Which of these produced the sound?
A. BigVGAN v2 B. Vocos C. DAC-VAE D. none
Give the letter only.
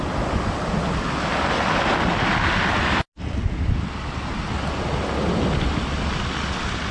D